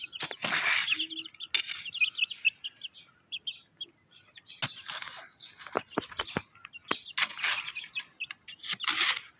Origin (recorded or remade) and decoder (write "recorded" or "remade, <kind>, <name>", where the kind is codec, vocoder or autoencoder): recorded